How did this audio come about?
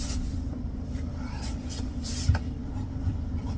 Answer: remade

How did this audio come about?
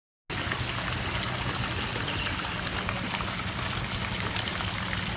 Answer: recorded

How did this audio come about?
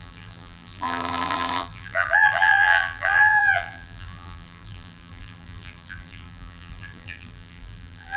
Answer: remade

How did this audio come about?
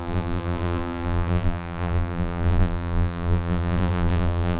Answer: remade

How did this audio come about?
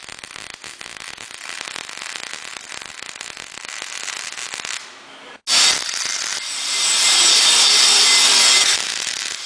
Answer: recorded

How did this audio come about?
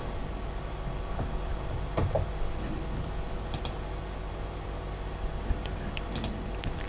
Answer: recorded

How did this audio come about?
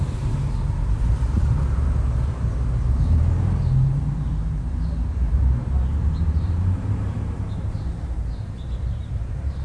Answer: remade